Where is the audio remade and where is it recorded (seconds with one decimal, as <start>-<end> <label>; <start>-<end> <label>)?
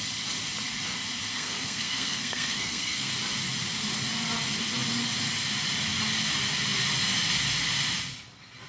0.0-1.3 recorded; 1.3-3.1 remade; 3.1-8.7 recorded